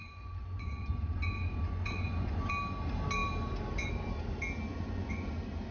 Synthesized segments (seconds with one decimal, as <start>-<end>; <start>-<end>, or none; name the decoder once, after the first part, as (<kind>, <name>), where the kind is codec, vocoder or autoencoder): 0.0-2.5 (vocoder, Vocos); 4.7-5.3